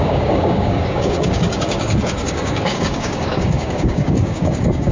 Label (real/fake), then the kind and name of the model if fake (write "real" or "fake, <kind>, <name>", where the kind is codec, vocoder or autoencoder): fake, codec, DAC